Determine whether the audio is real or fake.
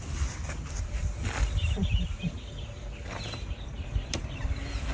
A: real